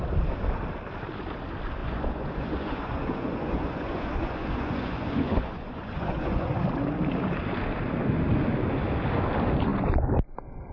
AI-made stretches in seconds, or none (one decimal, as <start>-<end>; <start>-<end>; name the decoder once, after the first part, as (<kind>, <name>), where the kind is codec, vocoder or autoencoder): 1.8-6.6 (vocoder, Vocos)